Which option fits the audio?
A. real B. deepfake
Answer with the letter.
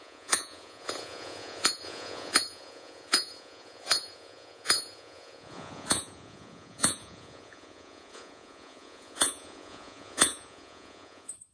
B